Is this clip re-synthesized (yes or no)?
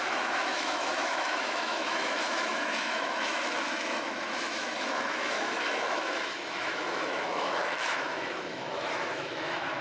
yes